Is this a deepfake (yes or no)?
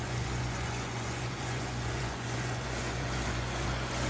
yes